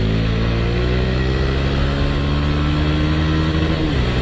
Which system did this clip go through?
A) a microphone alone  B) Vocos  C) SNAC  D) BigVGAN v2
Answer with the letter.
A